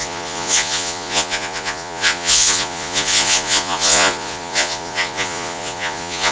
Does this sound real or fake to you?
fake